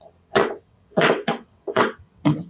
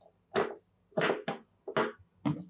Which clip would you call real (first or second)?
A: second